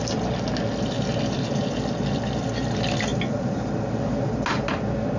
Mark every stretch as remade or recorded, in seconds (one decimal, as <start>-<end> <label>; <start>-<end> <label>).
0.0-5.2 recorded